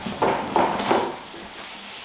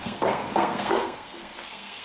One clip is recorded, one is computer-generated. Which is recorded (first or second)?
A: first